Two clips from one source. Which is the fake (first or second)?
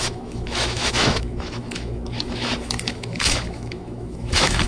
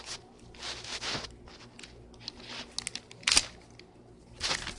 first